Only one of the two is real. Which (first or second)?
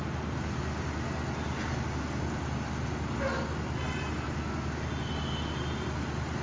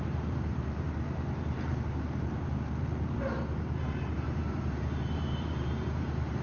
first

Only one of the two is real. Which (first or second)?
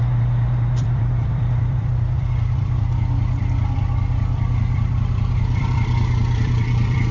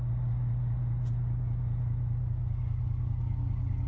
second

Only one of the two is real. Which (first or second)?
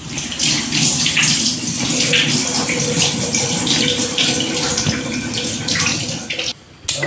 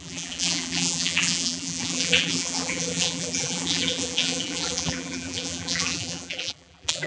first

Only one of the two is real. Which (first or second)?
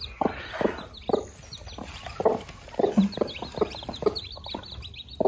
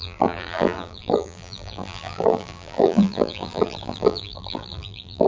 first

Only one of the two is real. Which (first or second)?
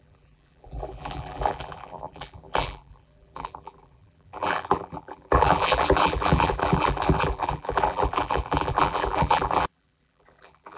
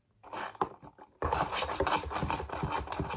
second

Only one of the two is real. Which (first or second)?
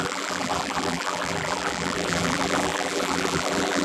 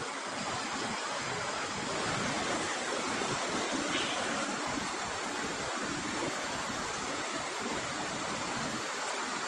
second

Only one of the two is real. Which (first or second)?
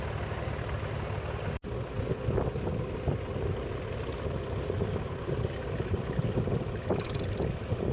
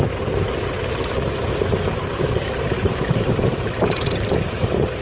first